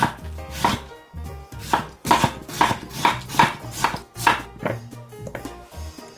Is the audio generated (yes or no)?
no